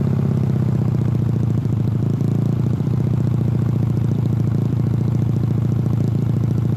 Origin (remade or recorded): recorded